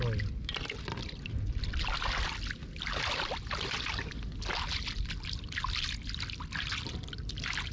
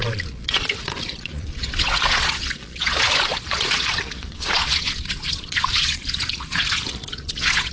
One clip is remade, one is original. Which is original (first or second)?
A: first